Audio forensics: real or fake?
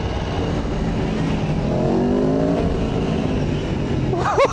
real